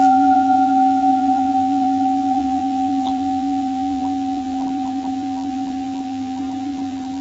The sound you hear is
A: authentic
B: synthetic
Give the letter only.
B